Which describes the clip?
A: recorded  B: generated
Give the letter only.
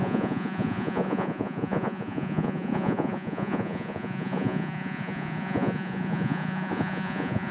B